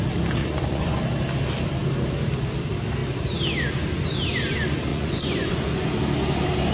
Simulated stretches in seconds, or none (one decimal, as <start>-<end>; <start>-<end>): 0.4-1.0; 4.9-5.9